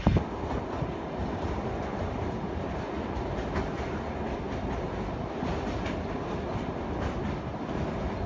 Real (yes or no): yes